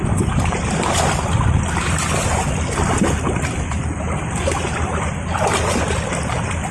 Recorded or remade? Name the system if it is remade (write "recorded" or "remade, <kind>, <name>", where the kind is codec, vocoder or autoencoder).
recorded